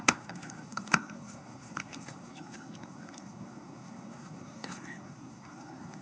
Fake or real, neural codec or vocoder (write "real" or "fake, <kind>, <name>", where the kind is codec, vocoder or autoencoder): fake, codec, SNAC